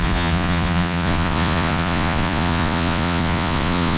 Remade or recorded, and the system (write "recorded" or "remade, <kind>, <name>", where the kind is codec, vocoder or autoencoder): remade, vocoder, Vocos